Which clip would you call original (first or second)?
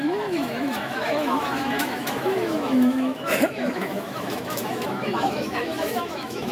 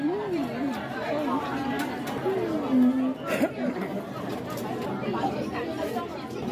second